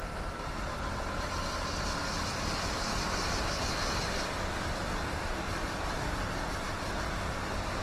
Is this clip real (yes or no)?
yes